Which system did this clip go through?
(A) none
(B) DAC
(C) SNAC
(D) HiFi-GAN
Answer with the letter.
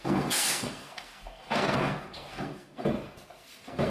C